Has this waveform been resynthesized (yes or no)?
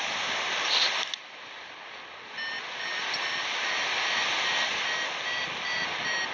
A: no